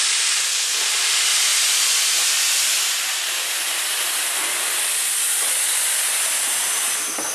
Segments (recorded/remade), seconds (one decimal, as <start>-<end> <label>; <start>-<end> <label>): 0.0-1.5 recorded; 1.5-2.4 remade; 2.4-7.3 recorded